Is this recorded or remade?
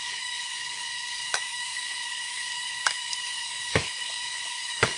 remade